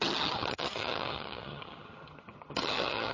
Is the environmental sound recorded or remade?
remade